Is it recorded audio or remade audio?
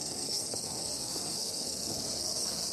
remade